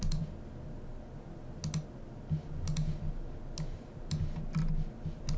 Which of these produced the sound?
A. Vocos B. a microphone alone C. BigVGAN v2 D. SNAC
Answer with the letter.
B